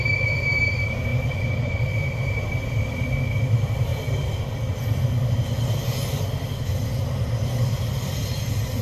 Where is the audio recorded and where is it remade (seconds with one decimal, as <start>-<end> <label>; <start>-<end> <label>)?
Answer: 0.0-1.1 remade; 1.1-3.5 recorded; 3.5-3.9 remade; 3.9-8.8 recorded